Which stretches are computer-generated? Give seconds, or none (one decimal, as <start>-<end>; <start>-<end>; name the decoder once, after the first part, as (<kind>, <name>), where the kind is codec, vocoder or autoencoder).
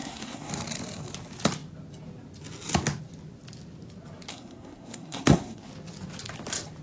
0.0-0.5 (codec, SNAC); 4.3-5.7